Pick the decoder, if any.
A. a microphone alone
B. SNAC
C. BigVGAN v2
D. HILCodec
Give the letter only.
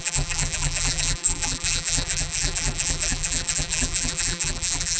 C